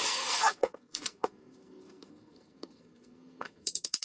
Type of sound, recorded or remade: remade